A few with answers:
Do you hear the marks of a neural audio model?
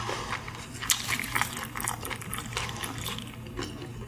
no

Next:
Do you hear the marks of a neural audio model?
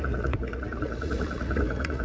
yes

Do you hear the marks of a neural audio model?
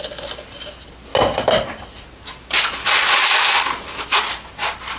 no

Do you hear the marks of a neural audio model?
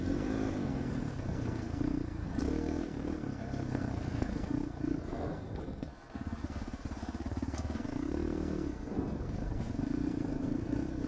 yes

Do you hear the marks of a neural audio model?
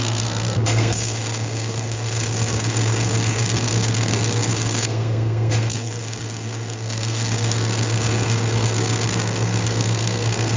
yes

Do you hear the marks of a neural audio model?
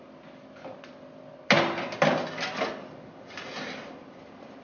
no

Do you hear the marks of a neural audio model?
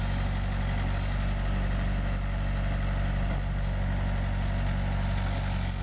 no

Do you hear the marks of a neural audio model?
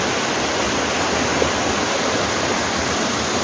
no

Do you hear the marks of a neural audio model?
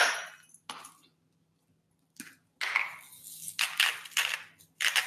no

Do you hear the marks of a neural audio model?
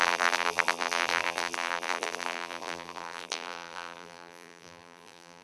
yes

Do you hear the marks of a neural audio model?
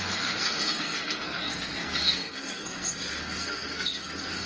yes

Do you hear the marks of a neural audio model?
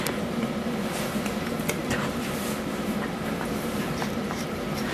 yes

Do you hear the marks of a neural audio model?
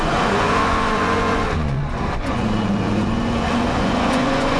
yes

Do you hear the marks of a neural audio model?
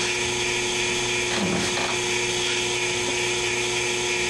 no